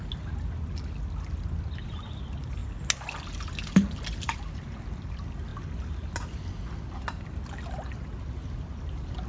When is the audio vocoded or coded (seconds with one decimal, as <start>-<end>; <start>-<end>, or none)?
none